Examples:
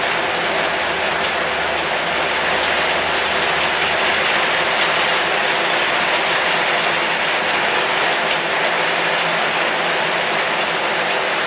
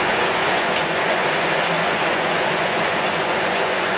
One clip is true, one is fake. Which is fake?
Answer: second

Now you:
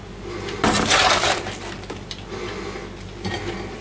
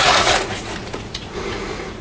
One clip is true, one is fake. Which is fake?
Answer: second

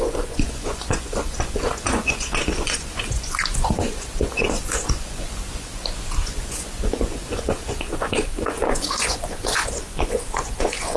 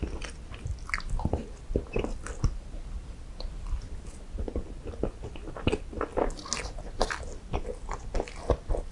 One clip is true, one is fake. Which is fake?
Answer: first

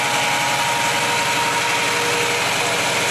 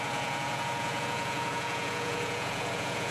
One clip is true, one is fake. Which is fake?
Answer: second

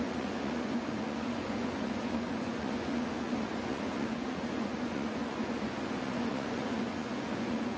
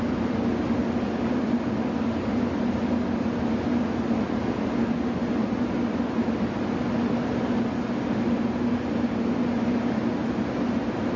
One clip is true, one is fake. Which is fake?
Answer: first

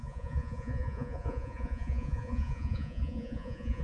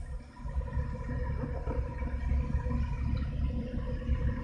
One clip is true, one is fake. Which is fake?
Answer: first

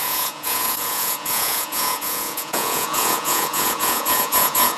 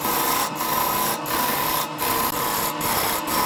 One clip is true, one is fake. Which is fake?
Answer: first